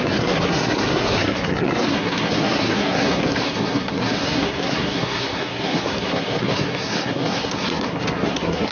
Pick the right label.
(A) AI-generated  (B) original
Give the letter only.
A